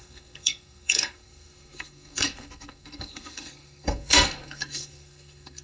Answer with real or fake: fake